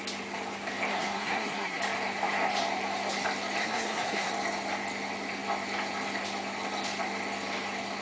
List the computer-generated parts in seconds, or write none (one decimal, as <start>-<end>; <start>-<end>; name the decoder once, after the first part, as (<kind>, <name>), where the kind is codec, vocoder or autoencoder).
0.9-1.8 (codec, SNAC); 3.6-4.3